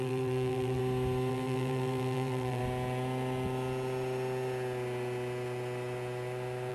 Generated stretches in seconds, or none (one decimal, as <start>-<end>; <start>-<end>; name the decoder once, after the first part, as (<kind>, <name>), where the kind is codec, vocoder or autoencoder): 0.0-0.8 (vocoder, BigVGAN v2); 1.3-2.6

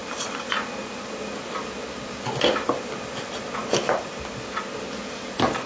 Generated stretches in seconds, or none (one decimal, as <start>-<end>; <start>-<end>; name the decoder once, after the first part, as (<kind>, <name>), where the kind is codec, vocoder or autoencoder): none

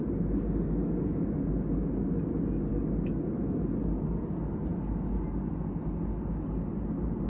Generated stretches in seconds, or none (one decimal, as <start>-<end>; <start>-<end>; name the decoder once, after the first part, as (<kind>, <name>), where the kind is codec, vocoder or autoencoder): none

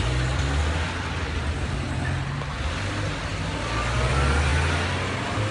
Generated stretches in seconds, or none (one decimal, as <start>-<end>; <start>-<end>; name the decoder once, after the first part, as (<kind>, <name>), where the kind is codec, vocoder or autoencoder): none

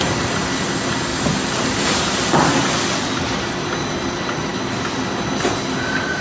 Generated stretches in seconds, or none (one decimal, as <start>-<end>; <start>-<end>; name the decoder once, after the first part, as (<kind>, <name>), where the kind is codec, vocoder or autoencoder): 1.1-2.7 (vocoder, BigVGAN v2)